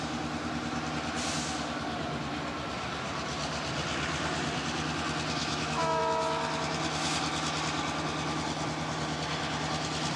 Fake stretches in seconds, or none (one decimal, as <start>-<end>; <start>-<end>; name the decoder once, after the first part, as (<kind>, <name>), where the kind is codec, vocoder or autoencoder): 5.4-6.0 (autoencoder, DAC-VAE)